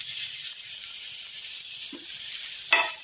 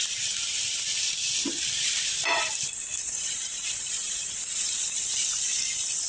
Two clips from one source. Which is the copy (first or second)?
second